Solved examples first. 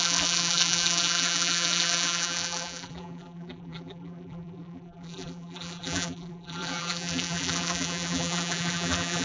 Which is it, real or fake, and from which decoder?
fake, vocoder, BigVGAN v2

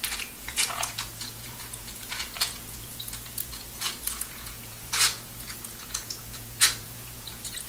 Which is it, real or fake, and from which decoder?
fake, vocoder, Vocos